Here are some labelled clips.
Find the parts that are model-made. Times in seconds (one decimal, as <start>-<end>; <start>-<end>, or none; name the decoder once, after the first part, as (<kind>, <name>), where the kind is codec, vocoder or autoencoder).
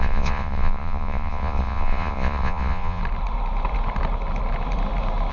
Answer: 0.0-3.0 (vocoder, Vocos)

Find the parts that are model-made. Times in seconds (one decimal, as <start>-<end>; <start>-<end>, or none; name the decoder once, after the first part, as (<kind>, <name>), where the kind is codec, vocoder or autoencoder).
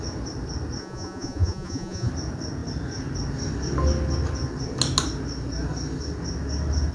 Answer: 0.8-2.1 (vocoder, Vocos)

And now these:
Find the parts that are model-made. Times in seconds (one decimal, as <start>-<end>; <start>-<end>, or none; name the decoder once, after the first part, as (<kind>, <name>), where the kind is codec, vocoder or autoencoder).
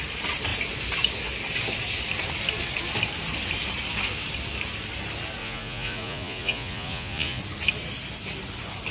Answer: 5.4-7.4 (vocoder, Vocos)